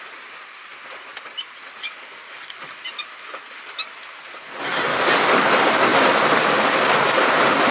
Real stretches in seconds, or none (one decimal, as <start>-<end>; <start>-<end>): 0.0-4.9; 5.5-7.7